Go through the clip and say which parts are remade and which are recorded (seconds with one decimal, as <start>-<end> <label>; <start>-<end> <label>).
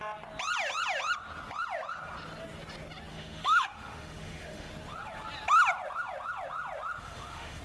0.0-3.1 recorded; 3.1-4.7 remade; 4.7-7.0 recorded; 7.0-7.6 remade